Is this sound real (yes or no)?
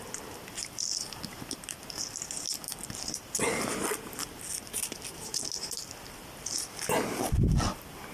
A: yes